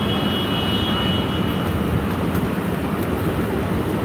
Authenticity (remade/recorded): recorded